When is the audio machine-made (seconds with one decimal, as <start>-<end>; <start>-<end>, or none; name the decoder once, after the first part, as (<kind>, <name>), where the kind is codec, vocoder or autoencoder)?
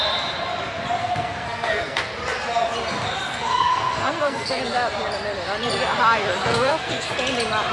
1.0-2.1 (codec, SNAC); 3.3-4.6; 6.5-7.1